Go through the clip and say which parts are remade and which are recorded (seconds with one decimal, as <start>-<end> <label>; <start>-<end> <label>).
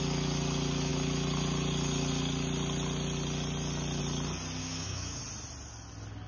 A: 0.0-4.6 recorded; 4.6-5.2 remade; 5.2-6.3 recorded